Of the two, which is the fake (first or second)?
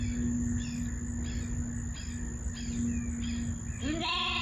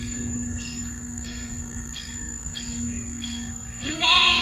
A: second